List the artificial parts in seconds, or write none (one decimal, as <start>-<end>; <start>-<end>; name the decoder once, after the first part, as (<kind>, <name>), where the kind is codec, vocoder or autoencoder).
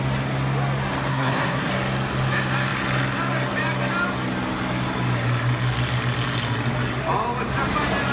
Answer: 1.1-1.7 (codec, SNAC)